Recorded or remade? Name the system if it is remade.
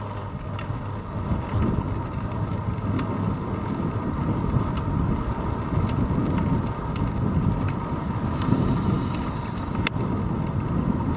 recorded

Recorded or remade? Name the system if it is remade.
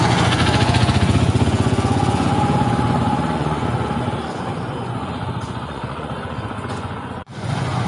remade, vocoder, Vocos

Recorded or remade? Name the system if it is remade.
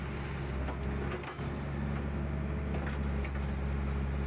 recorded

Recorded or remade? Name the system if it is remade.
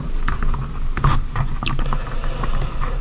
recorded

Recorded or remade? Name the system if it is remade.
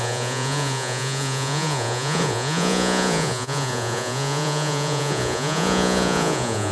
remade, vocoder, Vocos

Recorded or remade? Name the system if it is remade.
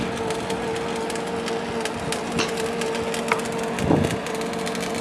recorded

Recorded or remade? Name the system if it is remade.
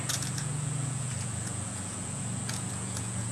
remade, vocoder, Vocos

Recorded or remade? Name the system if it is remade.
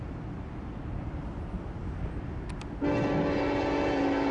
recorded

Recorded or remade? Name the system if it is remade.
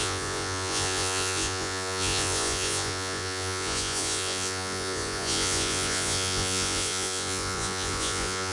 remade, vocoder, Vocos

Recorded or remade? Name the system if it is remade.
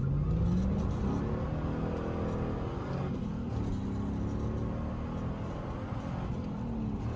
recorded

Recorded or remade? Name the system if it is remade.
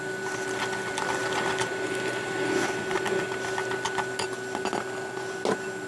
recorded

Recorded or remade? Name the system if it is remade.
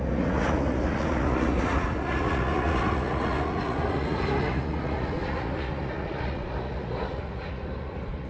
remade, vocoder, Vocos